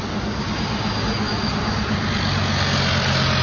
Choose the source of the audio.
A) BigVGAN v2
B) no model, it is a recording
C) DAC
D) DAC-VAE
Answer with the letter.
B